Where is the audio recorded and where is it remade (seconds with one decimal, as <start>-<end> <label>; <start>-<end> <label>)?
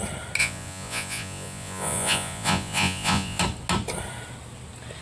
0.0-0.4 recorded; 0.4-3.4 remade; 3.4-5.0 recorded